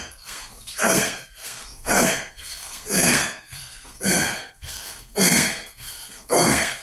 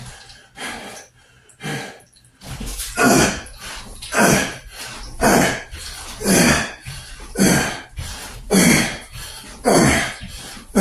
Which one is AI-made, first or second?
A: first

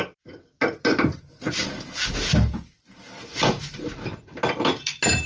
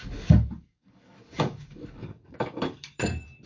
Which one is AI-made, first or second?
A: second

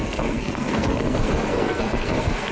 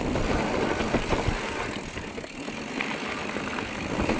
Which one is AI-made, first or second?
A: first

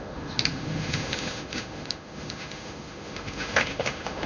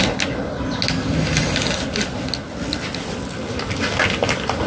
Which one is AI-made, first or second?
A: first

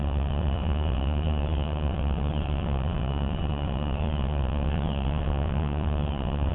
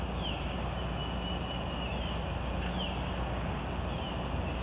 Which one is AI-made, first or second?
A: first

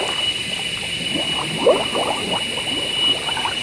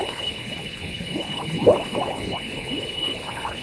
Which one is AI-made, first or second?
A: second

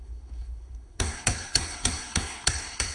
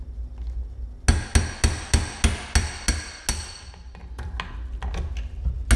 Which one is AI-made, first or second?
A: first